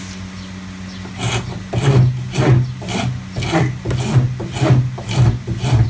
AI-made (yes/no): no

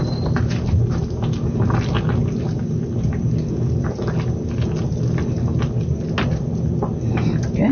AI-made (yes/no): no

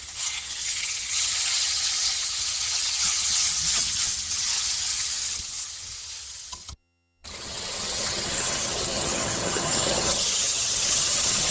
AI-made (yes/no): yes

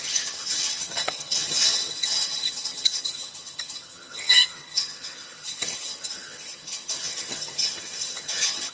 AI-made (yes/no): yes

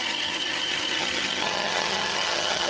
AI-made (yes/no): yes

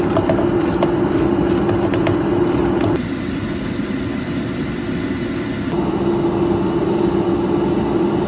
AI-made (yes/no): no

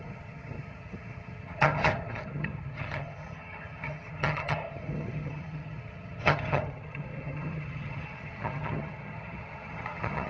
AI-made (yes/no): yes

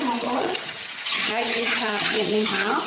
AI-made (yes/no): yes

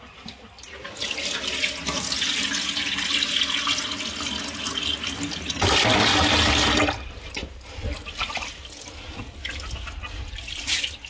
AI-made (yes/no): no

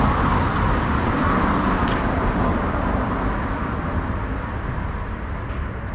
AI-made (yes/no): no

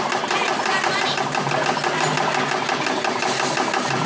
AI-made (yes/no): no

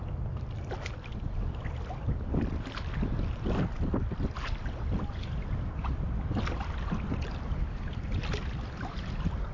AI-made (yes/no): no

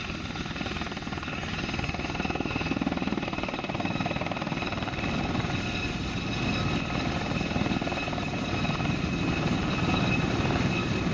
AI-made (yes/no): no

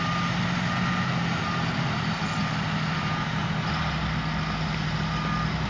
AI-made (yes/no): no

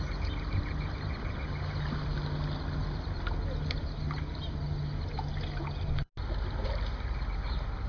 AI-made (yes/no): no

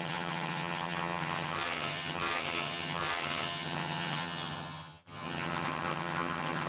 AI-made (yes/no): yes